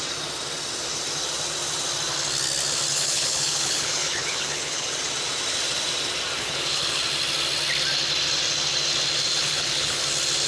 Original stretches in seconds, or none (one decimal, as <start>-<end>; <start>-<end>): 0.0-2.9; 4.9-6.4; 7.0-9.4; 10.0-10.5